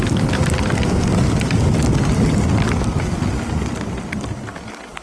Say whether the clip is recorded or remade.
recorded